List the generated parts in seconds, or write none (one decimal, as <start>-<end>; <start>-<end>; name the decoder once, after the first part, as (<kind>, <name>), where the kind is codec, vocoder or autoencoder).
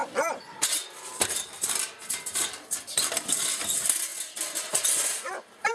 0.0-3.4 (vocoder, BigVGAN v2)